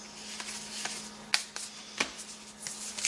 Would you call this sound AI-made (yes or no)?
no